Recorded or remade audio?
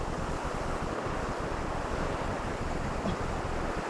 recorded